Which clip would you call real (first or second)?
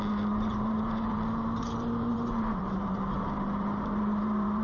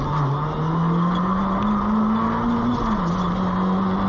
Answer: second